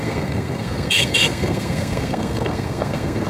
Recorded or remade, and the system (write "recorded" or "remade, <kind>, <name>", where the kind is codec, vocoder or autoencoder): remade, codec, SNAC